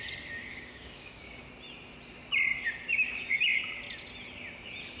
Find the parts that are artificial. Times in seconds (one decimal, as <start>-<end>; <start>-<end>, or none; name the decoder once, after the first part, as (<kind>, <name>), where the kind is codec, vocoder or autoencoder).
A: 0.4-1.5 (codec, DAC)